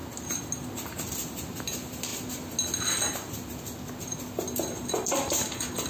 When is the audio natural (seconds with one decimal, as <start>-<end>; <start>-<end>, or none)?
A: 0.0-5.9

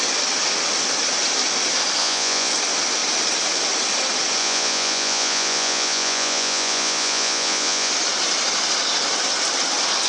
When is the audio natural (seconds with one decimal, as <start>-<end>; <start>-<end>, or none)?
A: 0.0-2.0; 2.5-4.4; 7.9-10.1

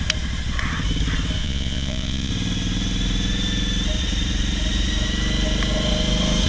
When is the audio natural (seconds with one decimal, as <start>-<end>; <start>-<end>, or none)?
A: 0.0-1.4; 2.3-6.5

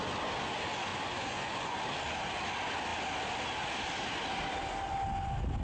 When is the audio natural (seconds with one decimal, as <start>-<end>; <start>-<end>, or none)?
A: 0.0-0.9; 1.8-5.6